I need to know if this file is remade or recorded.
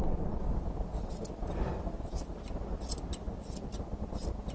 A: recorded